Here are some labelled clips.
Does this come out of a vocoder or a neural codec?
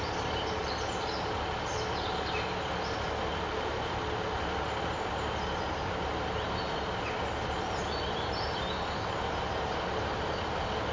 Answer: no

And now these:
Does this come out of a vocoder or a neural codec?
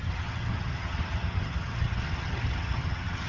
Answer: yes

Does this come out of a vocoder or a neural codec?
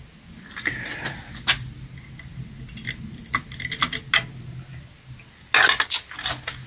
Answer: no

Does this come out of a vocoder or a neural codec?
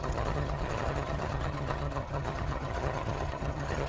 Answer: yes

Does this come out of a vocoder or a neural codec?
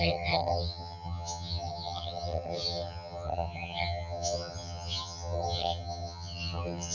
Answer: yes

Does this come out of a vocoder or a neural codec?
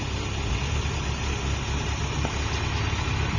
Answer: no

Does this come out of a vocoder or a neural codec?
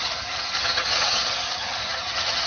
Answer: yes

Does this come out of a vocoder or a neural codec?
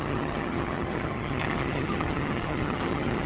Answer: yes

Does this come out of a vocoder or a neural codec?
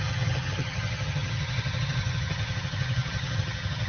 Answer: yes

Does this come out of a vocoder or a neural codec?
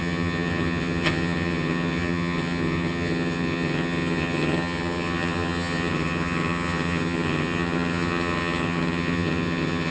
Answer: yes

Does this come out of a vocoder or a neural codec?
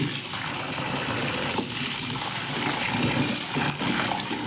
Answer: no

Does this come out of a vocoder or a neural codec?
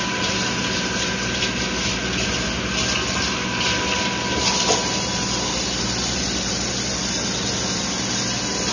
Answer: no